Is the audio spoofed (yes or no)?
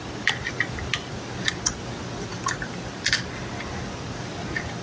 no